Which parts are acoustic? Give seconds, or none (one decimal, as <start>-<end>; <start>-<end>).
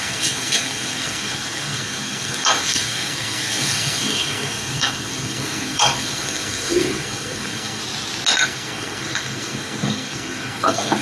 7.8-8.4